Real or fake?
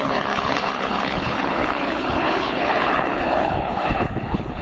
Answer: fake